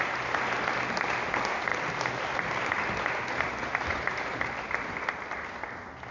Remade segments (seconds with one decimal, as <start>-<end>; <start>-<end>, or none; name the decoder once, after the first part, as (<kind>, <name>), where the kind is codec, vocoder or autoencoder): none